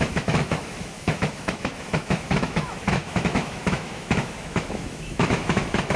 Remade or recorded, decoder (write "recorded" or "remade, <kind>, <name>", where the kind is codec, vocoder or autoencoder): remade, autoencoder, DAC-VAE